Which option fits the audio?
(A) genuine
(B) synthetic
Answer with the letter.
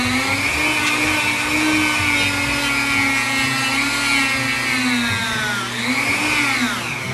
A